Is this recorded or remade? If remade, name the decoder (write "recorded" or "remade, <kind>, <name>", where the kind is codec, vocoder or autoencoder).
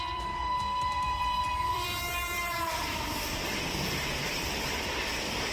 remade, vocoder, BigVGAN v2